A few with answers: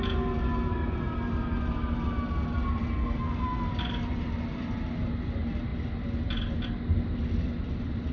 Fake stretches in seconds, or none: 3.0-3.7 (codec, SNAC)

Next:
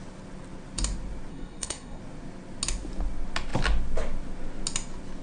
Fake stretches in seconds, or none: 1.3-2.0 (codec, SNAC)

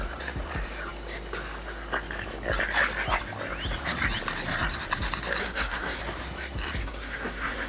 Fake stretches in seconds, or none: 5.4-6.0 (codec, SNAC); 6.8-7.7

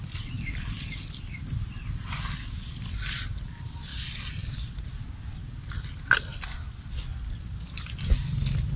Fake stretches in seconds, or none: none

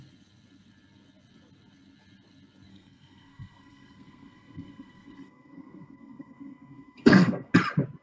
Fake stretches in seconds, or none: 2.7-7.5 (codec, SNAC)

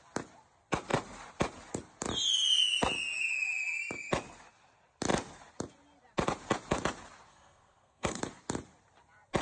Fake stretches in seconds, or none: 7.3-8.2 (codec, SNAC)